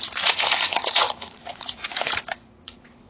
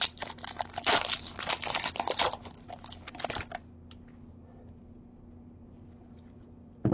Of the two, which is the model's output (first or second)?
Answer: first